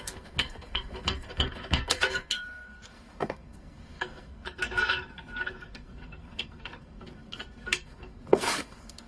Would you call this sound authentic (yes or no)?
no